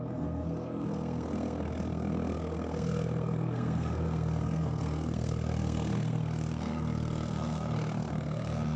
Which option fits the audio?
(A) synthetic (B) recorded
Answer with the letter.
A